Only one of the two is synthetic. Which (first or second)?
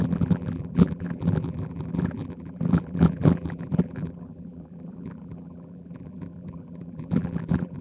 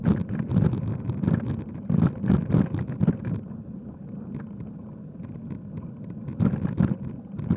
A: first